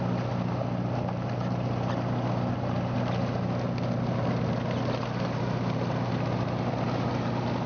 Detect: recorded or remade recorded